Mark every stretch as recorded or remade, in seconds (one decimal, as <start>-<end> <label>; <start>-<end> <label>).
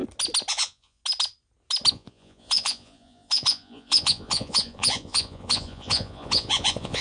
0.0-0.5 recorded; 0.5-1.0 remade; 1.0-1.9 recorded; 1.9-7.0 remade